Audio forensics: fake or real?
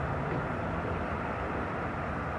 real